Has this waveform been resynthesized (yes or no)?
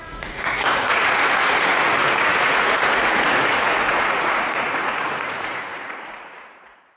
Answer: yes